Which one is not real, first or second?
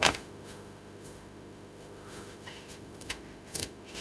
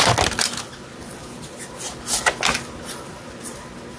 first